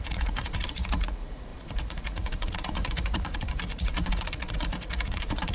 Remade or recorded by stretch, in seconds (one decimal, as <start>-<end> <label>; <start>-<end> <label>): 0.0-5.5 remade